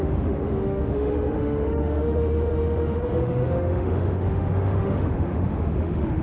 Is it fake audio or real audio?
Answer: fake